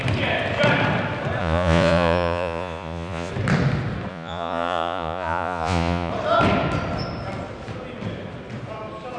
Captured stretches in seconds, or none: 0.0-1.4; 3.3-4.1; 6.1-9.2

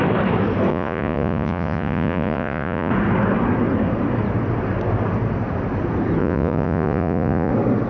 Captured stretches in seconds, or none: 0.0-0.7; 2.9-6.2; 7.5-7.9

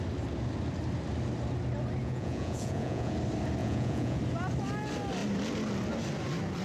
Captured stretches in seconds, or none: 0.0-2.0; 3.1-3.6; 4.2-6.6